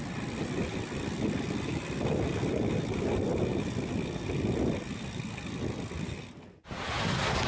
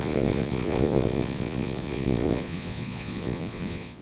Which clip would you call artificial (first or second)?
second